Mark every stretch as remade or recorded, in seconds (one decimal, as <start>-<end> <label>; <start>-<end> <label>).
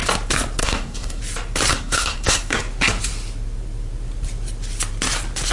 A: 0.0-0.6 recorded; 0.6-1.2 remade; 1.2-1.7 recorded; 1.7-2.6 remade; 2.6-5.5 recorded